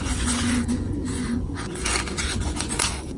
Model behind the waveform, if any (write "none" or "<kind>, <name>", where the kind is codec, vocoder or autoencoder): vocoder, Vocos